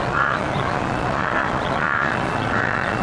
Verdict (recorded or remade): remade